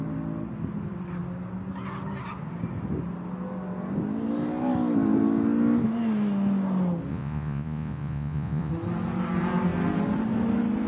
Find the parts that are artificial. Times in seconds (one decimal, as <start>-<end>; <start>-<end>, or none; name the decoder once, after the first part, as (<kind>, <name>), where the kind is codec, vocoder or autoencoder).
7.1-8.7 (vocoder, Vocos)